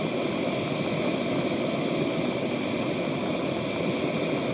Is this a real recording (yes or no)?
yes